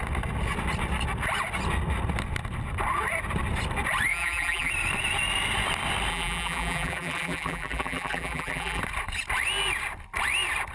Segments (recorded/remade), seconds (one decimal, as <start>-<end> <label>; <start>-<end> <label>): 0.0-4.1 recorded; 4.1-4.7 remade; 4.7-6.1 recorded; 6.1-8.8 remade; 8.8-10.7 recorded